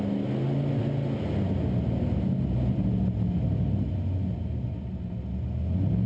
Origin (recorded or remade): recorded